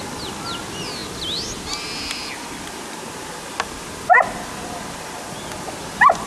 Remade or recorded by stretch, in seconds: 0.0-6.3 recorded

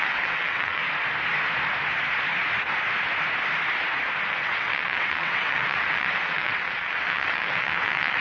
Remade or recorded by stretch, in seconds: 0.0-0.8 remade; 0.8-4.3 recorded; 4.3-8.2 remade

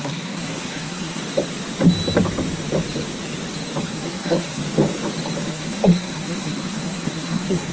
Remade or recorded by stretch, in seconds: 0.0-1.2 remade; 1.2-3.8 recorded; 3.8-4.6 remade; 4.6-5.5 recorded; 5.5-7.7 remade

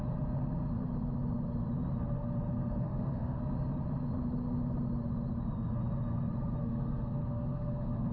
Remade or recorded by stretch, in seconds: 0.0-2.8 recorded; 2.8-3.4 remade; 3.4-6.6 recorded; 6.6-8.1 remade

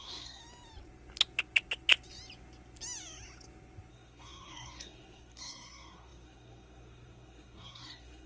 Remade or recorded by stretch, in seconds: 0.0-0.4 remade; 0.4-3.9 recorded; 3.9-8.3 remade